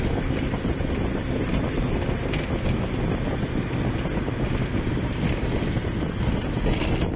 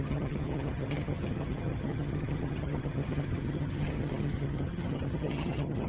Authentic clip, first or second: first